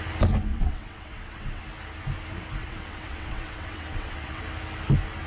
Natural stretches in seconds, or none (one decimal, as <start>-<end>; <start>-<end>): 0.0-0.5; 1.6-2.6; 4.4-5.3